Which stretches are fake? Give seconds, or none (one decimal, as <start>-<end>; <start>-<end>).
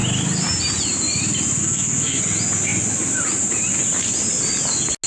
1.6-2.2